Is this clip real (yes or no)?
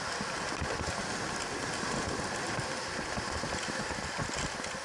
yes